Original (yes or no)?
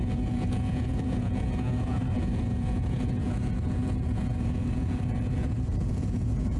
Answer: no